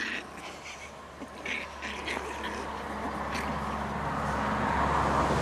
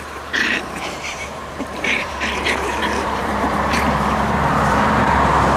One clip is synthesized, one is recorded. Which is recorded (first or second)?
first